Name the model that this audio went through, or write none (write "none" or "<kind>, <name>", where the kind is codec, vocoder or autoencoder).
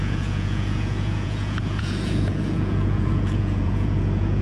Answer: vocoder, Vocos